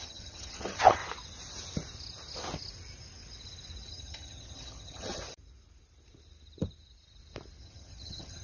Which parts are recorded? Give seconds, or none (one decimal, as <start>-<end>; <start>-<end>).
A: 1.0-3.9; 5.2-7.6